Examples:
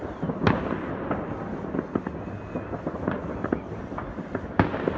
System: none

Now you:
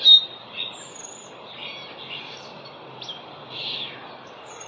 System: none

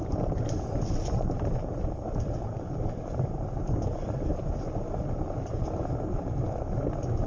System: vocoder, BigVGAN v2